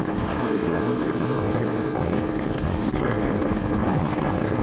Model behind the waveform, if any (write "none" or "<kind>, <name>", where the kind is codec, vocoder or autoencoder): codec, SNAC